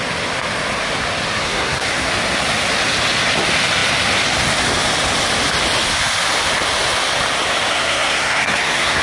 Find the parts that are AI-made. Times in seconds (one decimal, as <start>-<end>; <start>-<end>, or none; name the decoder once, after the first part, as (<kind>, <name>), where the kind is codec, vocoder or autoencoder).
1.4-2.1 (codec, SNAC); 7.7-9.0